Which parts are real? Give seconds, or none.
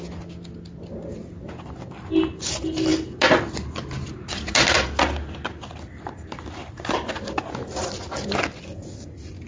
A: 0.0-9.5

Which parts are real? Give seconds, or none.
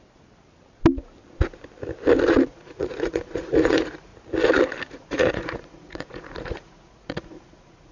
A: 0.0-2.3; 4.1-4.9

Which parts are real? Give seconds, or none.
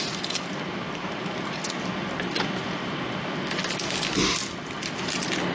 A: 0.0-5.5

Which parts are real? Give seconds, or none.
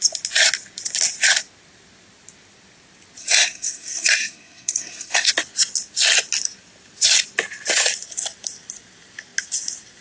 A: 0.0-3.2; 5.3-10.0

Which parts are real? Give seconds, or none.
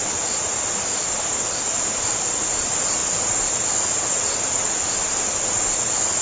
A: 0.0-6.2